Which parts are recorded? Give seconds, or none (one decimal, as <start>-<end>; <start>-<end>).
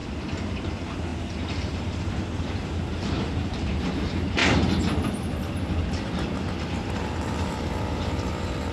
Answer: 0.0-0.6; 4.4-5.7